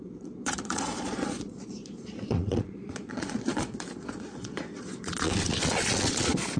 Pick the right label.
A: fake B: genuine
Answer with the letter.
A